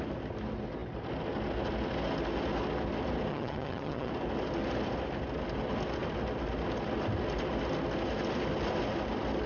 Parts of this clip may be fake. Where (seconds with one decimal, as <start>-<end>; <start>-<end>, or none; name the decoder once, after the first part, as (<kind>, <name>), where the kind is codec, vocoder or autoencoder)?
3.3-4.1 (vocoder, HiFi-GAN)